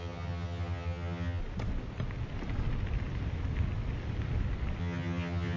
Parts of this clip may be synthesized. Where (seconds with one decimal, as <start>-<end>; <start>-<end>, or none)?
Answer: 0.0-1.4; 4.8-5.6